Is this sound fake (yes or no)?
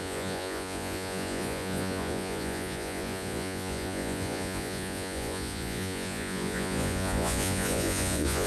yes